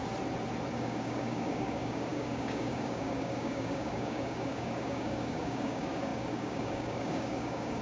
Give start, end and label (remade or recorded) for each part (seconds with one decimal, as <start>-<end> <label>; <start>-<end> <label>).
0.0-0.7 recorded; 0.7-7.8 remade